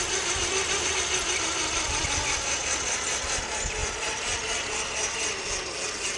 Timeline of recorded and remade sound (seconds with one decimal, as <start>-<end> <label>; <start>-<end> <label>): 0.0-6.2 recorded